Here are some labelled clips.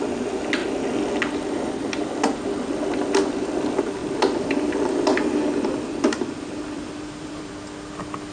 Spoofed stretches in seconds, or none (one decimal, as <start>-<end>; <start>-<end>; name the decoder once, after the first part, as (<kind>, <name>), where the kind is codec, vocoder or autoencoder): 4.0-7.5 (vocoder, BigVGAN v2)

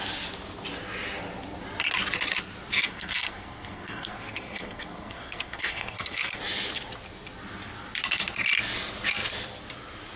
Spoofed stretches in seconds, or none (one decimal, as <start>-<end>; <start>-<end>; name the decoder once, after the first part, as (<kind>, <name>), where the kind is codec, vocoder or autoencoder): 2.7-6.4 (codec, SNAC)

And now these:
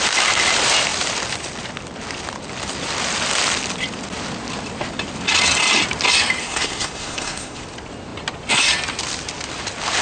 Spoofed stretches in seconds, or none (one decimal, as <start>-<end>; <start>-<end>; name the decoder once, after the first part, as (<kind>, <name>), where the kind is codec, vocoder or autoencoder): 6.4-7.6 (codec, SNAC)

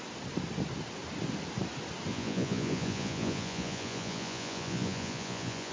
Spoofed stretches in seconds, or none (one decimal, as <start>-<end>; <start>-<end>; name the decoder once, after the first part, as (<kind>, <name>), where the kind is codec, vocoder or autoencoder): 2.1-5.7 (vocoder, Vocos)

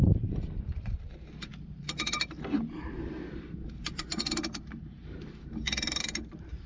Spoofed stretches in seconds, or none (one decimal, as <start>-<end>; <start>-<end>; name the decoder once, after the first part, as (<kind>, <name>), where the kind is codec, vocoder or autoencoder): 0.0-6.7 (vocoder, BigVGAN v2)

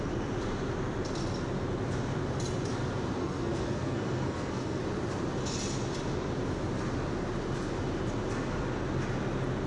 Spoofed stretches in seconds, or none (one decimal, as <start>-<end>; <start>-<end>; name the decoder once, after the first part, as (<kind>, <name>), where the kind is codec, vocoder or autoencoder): 3.2-4.8 (codec, SNAC)

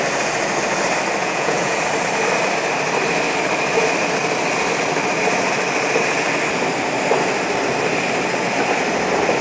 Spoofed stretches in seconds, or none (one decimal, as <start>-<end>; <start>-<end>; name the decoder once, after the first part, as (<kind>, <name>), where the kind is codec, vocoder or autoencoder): 1.2-1.8 (vocoder, Vocos)